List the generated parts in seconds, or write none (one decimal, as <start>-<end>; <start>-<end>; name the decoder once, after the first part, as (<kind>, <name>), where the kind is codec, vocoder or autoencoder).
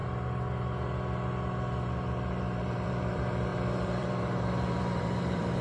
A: 2.3-5.6 (vocoder, BigVGAN v2)